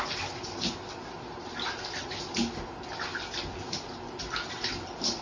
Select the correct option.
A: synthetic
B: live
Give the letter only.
B